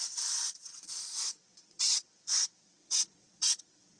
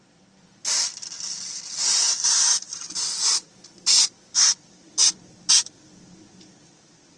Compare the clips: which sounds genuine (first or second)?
second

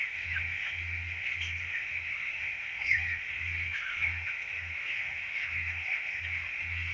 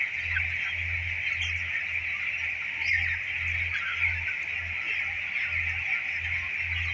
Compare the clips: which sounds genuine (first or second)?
second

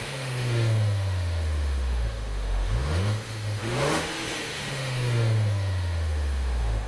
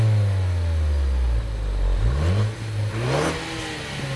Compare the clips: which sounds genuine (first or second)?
second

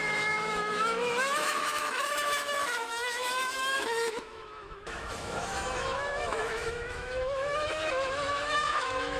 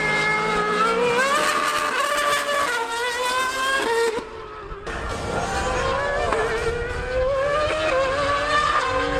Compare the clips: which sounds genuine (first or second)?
second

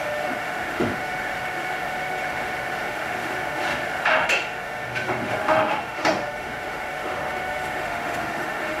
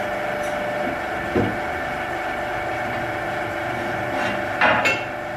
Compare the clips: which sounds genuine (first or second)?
second